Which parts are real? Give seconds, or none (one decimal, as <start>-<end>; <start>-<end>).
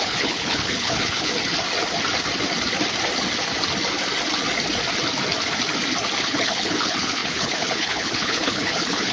1.3-6.2